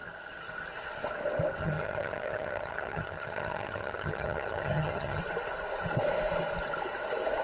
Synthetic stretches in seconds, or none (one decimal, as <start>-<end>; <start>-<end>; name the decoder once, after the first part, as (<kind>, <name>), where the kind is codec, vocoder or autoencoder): 1.6-5.2 (vocoder, HiFi-GAN)

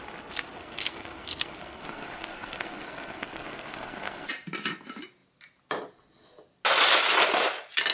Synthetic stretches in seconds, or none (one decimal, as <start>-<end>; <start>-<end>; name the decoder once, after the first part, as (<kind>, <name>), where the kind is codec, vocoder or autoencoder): 0.6-4.3 (codec, SNAC)

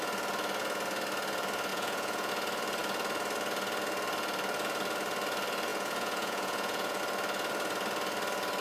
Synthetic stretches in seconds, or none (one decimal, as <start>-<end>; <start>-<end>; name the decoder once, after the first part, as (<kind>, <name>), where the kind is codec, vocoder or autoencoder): 1.7-2.3 (vocoder, Vocos); 5.7-7.0

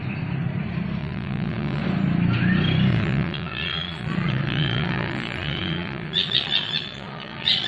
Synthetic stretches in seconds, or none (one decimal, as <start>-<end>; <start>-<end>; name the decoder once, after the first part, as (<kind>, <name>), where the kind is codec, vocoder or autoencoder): 1.0-1.8 (vocoder, Vocos); 2.9-7.7

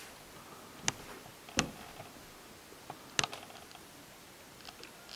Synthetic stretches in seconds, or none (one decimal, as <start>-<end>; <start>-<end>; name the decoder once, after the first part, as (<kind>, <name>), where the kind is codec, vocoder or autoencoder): none

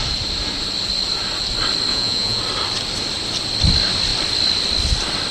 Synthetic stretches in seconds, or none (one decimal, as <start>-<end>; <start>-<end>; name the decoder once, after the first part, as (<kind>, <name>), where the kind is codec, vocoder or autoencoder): 1.9-2.4 (vocoder, Vocos)

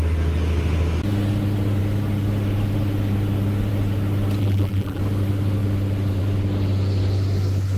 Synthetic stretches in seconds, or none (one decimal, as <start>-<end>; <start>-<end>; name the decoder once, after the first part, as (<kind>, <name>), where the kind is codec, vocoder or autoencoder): 4.4-5.0 (vocoder, BigVGAN v2)